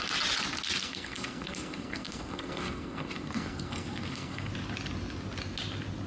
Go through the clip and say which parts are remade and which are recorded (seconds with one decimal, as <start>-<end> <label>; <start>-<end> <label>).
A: 0.0-0.8 recorded; 0.8-4.5 remade; 4.5-6.1 recorded